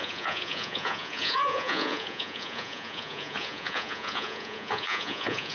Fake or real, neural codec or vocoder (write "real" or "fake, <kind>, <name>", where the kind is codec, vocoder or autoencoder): fake, vocoder, Vocos